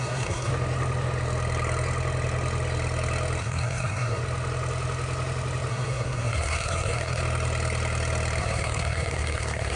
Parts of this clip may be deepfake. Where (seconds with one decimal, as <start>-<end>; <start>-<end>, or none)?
0.0-0.5; 3.4-4.2; 5.7-7.2; 8.4-9.8